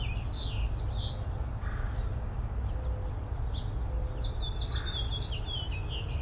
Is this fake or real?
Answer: real